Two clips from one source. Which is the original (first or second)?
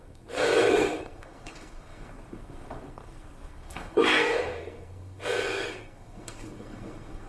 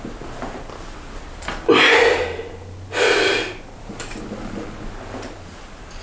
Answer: second